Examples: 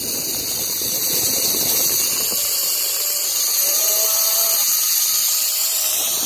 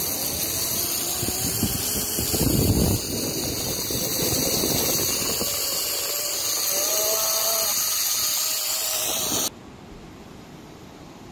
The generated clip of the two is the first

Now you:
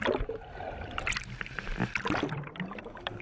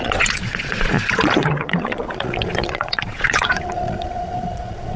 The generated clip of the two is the second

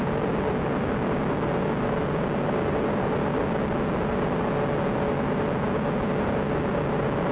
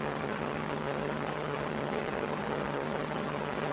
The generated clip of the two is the second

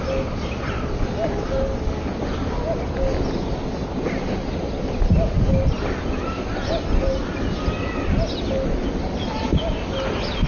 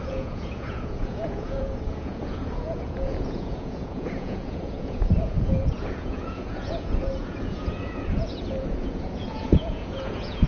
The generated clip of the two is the second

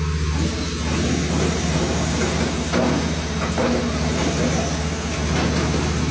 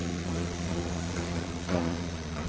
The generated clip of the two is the second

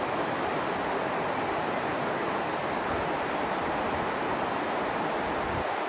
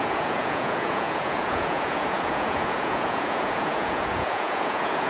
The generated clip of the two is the second